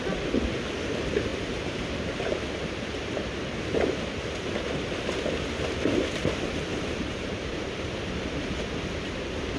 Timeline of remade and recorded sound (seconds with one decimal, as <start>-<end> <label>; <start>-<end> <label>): 0.0-1.3 recorded; 1.3-4.2 remade; 4.2-6.7 recorded; 6.7-7.7 remade; 7.7-9.6 recorded